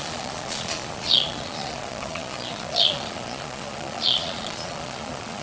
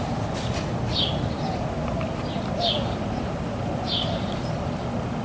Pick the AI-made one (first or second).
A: first